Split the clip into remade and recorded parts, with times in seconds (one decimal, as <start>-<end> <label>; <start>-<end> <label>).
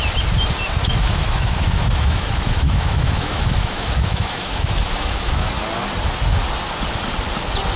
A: 0.0-0.8 recorded; 0.8-5.5 remade; 5.5-7.8 recorded